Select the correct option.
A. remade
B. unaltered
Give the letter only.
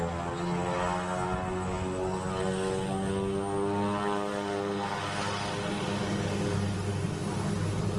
B